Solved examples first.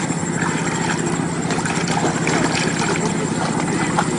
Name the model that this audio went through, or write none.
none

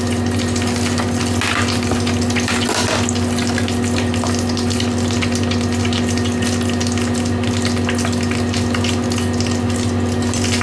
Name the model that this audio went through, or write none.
none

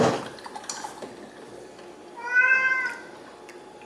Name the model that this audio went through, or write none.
none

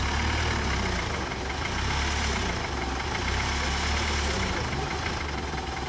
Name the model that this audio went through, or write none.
none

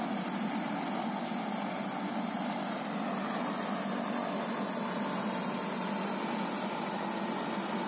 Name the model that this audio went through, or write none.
none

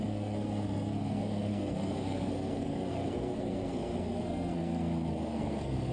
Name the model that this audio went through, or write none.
codec, SNAC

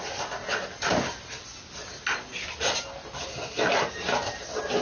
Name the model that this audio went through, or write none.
none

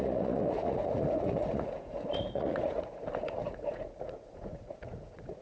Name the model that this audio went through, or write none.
vocoder, Vocos